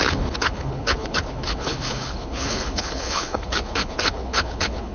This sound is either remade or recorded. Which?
remade